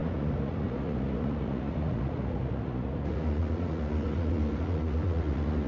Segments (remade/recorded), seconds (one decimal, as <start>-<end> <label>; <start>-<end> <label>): 0.0-5.7 remade